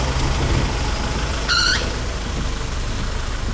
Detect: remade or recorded recorded